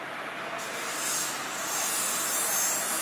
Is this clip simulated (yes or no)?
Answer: no